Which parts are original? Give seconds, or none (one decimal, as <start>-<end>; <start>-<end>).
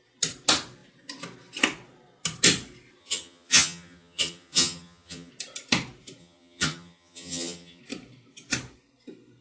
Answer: 0.0-3.0; 5.3-6.2; 7.8-9.4